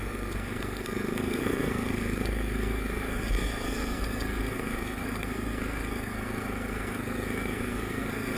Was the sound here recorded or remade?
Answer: remade